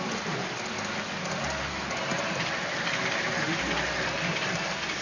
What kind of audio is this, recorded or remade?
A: recorded